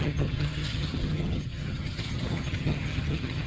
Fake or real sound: fake